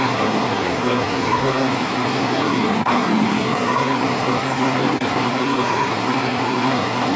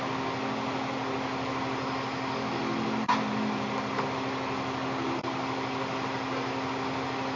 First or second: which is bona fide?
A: second